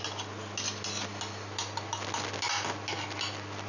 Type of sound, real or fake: real